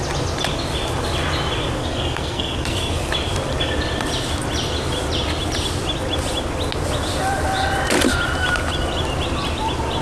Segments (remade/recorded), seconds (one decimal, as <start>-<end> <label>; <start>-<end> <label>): 0.0-1.8 recorded; 1.8-3.1 remade; 3.1-10.0 recorded